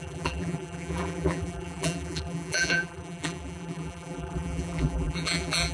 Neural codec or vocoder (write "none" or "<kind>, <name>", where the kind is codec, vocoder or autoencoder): vocoder, BigVGAN v2